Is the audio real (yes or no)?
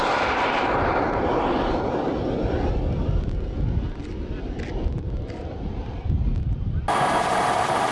yes